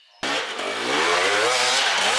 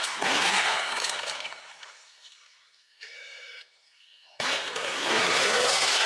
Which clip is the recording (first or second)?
first